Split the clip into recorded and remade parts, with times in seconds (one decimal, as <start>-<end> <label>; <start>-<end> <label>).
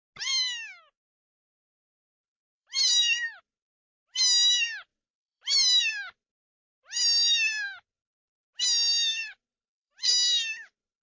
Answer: 0.0-1.9 recorded; 1.9-3.4 remade; 3.4-4.9 recorded; 4.9-5.8 remade; 5.8-9.5 recorded; 9.5-10.1 remade; 10.1-11.0 recorded